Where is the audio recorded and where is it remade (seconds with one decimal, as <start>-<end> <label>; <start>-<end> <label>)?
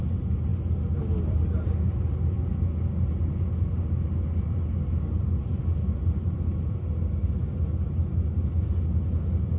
0.0-9.6 recorded